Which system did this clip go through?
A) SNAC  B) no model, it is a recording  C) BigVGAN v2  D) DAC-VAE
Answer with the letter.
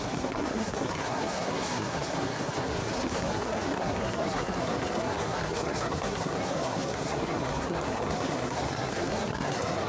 A